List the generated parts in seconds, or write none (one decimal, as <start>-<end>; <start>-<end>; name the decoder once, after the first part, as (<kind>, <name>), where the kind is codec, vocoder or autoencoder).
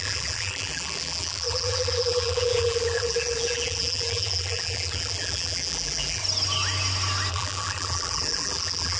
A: 0.0-6.2 (vocoder, BigVGAN v2); 7.3-9.0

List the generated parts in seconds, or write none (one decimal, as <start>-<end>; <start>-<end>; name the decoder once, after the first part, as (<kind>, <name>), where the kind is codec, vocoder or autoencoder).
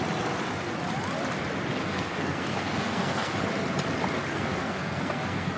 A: 1.8-3.4 (codec, SNAC); 4.3-5.6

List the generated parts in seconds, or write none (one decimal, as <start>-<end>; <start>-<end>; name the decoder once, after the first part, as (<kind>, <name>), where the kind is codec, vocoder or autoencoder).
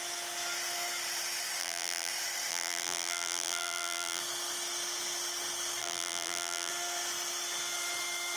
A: 1.6-2.1 (vocoder, BigVGAN v2); 2.5-4.2; 5.8-6.7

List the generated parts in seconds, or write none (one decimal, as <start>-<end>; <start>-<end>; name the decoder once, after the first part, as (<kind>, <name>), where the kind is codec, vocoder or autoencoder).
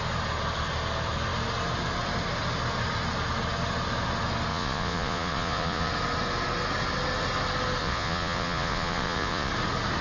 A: 4.5-5.9 (vocoder, Vocos); 7.8-9.5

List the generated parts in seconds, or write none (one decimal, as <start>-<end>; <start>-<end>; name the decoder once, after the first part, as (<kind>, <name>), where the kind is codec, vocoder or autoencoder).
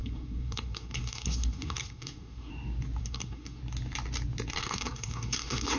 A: 0.0-2.5 (codec, SNAC); 3.0-3.6; 4.5-5.8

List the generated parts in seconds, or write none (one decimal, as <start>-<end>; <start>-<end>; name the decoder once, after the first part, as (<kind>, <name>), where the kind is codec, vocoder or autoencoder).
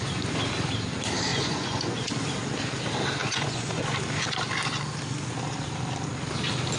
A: 1.3-2.1 (vocoder, Vocos); 3.2-3.8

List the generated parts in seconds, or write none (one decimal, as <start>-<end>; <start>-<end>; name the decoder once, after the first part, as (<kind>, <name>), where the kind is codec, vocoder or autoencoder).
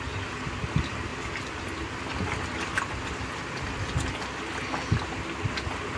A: none